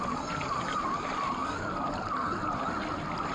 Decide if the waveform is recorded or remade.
recorded